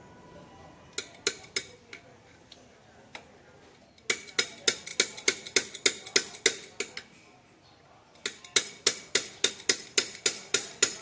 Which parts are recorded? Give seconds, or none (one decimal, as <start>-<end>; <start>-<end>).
0.0-11.0

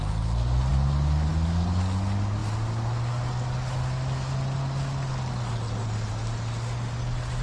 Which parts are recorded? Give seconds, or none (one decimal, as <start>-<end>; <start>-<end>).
0.0-7.4

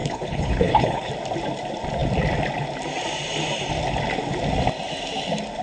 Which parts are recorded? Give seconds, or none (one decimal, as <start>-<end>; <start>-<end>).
1.1-5.6

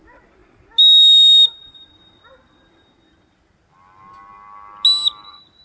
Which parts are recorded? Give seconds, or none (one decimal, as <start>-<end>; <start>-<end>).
0.0-5.6

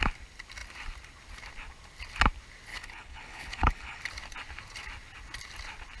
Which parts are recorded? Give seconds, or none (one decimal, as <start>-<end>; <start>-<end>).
0.0-2.7; 4.0-6.0

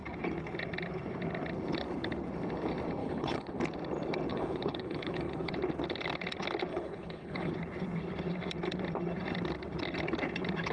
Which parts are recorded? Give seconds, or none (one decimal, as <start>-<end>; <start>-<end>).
0.0-3.0; 3.6-4.3; 5.5-6.7; 7.5-10.7

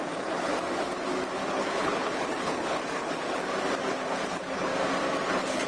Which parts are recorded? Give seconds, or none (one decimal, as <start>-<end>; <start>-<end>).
0.5-1.5; 3.4-3.9; 4.7-5.3